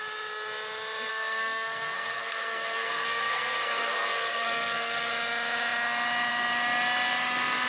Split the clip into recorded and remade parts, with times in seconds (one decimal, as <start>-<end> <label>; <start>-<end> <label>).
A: 0.0-1.1 recorded; 1.1-5.1 remade; 5.1-7.7 recorded